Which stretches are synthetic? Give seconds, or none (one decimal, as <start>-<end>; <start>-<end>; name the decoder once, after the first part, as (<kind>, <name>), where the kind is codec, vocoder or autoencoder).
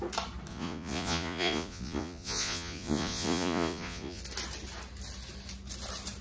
0.5-4.2 (vocoder, Vocos)